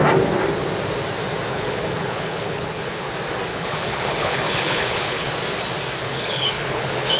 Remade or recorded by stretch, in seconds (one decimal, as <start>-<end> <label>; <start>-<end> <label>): 0.0-1.5 recorded; 1.5-3.1 remade; 3.1-3.5 recorded; 3.5-5.3 remade; 5.3-6.0 recorded; 6.0-7.2 remade